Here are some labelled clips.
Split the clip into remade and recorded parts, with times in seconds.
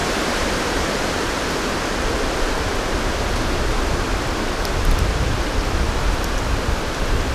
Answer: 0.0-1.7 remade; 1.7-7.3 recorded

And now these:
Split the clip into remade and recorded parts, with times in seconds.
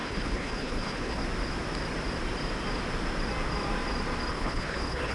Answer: 0.0-1.2 remade; 1.2-4.3 recorded; 4.3-5.1 remade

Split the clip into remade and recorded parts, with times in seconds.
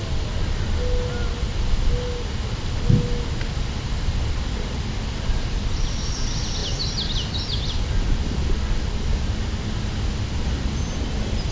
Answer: 0.0-11.5 recorded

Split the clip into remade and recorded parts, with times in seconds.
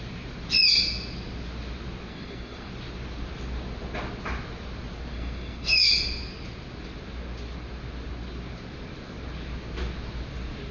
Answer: 0.0-2.1 recorded; 2.1-2.7 remade; 2.7-5.1 recorded; 5.1-5.9 remade; 5.9-10.7 recorded